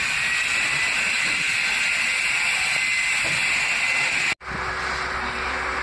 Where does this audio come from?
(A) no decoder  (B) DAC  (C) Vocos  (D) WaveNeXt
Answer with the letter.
A